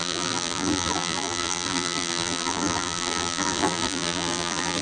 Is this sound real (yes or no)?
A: no